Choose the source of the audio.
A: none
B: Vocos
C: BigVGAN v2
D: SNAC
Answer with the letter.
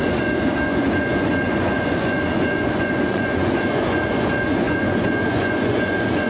B